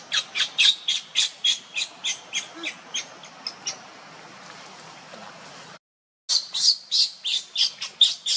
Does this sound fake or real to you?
real